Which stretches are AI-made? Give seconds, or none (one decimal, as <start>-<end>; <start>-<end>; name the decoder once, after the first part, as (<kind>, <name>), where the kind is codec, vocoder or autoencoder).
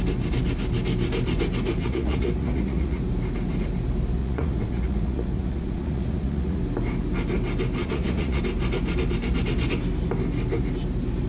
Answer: 1.8-3.0 (vocoder, Vocos); 4.2-6.6; 7.8-8.4